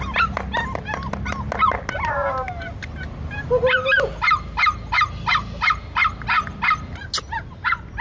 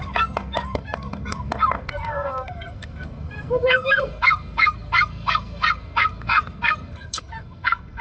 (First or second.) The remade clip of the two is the second